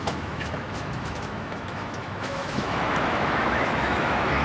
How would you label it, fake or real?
fake